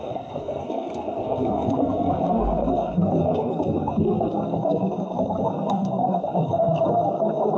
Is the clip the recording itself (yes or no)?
no